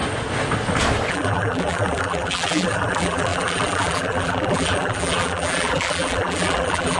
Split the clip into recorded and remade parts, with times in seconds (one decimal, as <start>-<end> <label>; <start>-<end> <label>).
0.0-1.1 recorded; 1.1-7.0 remade